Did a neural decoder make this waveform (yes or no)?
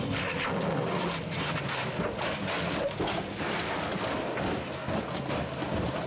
no